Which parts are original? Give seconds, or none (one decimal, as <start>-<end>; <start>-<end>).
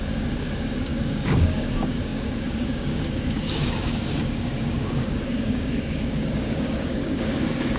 none